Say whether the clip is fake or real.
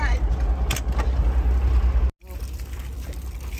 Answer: real